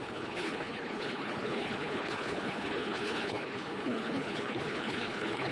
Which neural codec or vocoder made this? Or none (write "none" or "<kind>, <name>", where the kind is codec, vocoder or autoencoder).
codec, HILCodec